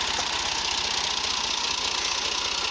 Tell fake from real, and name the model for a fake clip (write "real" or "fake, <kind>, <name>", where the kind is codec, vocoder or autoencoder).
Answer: fake, vocoder, BigVGAN v2